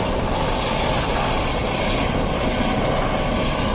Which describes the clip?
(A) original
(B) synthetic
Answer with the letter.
A